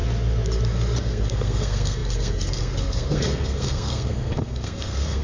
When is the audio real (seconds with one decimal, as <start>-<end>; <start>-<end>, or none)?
0.0-1.0